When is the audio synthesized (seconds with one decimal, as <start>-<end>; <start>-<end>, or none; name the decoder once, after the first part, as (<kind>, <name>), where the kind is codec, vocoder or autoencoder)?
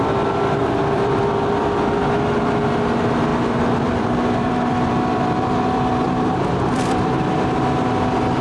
0.6-2.0 (vocoder, BigVGAN v2); 3.3-7.2